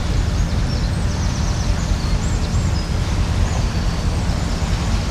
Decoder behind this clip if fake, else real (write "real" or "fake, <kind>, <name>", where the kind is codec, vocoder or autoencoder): real